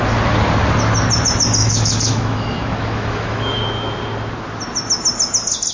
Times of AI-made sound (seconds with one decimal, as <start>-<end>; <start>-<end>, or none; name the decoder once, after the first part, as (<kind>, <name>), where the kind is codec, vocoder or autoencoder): 1.6-3.6 (autoencoder, DAC-VAE)